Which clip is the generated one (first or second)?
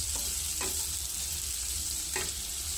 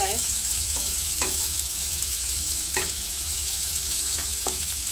second